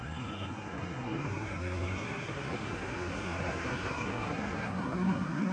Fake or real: fake